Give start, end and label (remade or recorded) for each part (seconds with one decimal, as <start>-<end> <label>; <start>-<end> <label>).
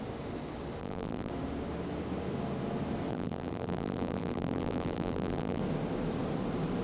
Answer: 0.0-0.8 recorded; 0.8-1.3 remade; 1.3-3.1 recorded; 3.1-5.6 remade; 5.6-6.8 recorded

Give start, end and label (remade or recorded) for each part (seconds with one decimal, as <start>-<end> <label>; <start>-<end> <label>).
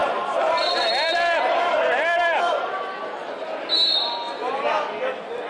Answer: 0.0-2.7 remade; 2.7-5.5 recorded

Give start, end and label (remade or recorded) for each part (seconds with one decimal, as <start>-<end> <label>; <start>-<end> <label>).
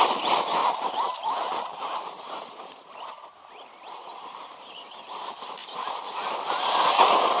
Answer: 0.0-0.6 recorded; 0.6-5.0 remade; 5.0-5.6 recorded; 5.6-6.3 remade; 6.3-7.4 recorded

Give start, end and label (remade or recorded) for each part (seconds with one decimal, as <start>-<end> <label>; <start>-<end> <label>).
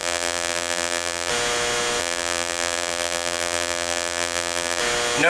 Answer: 0.0-1.3 remade; 1.3-2.0 recorded; 2.0-4.8 remade; 4.8-5.3 recorded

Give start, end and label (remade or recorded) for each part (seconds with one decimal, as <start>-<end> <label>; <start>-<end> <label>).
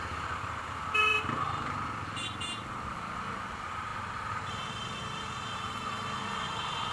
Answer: 0.0-6.9 recorded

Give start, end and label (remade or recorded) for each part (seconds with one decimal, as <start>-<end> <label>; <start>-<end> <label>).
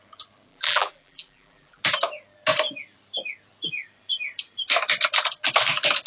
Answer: 0.0-0.5 recorded; 0.5-1.8 remade; 1.8-6.1 recorded